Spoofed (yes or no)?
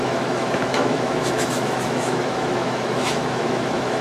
yes